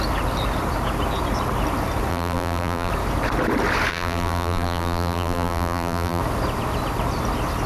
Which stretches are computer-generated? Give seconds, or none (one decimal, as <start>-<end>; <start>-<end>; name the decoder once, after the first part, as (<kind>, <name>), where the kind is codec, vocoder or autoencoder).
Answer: 2.1-2.9 (vocoder, BigVGAN v2); 3.9-6.2